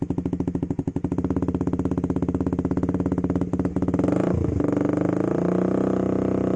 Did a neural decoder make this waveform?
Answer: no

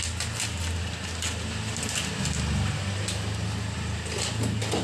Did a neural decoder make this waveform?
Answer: no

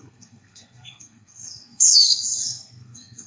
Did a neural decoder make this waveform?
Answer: yes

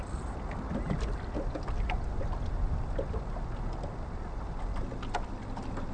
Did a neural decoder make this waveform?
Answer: no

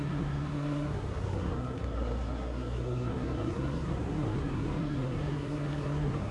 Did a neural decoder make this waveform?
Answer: yes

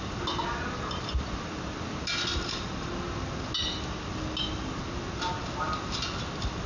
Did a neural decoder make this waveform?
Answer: no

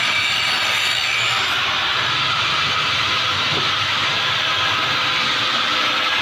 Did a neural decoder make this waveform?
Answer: no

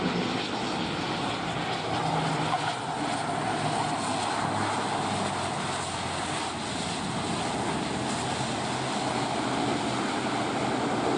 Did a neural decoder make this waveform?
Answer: no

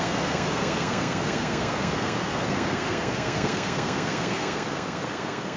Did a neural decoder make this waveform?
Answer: yes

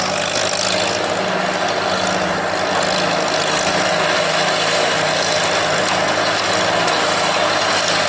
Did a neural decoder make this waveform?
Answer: no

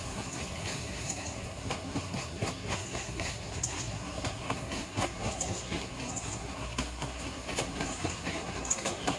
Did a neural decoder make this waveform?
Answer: yes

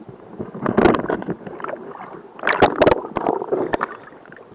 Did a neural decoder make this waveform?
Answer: no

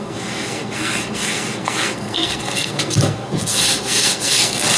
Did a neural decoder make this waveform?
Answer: yes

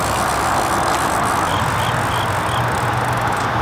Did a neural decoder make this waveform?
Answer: no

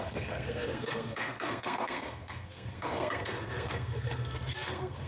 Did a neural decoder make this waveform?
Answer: yes